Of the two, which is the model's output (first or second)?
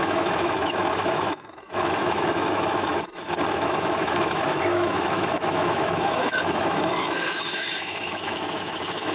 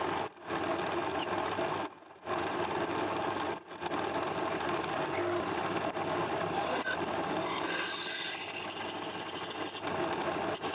first